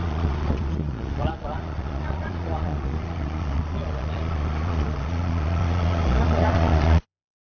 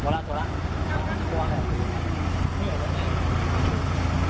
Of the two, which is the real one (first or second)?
second